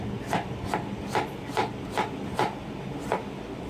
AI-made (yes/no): no